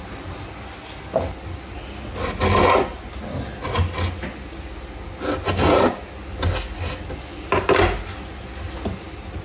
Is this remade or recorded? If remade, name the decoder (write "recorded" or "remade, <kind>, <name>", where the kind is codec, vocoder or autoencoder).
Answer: recorded